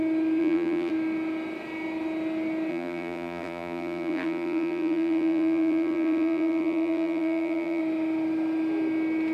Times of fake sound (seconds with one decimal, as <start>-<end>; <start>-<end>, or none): 0.4-0.9; 2.7-7.8